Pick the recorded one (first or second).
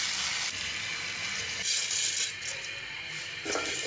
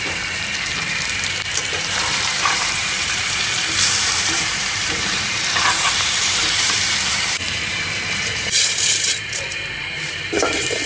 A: first